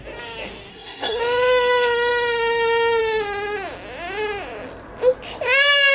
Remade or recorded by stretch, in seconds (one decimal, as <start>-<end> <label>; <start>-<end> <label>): 0.0-0.7 recorded; 0.7-1.2 remade; 1.2-5.9 recorded